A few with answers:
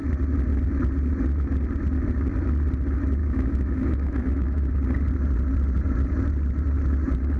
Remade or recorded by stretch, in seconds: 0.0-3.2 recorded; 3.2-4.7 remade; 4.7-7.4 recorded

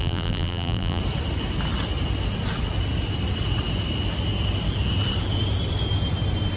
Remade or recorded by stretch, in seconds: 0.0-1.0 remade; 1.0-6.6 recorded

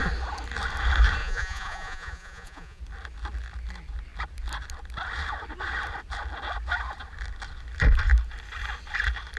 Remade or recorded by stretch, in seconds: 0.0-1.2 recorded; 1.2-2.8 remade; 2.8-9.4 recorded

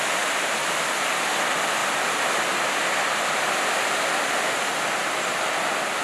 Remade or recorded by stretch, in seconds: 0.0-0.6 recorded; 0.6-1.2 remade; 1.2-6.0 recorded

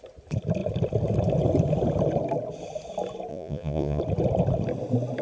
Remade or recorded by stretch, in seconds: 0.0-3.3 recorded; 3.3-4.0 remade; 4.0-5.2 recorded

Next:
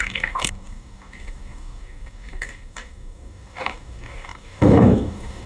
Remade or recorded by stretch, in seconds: 0.0-5.5 remade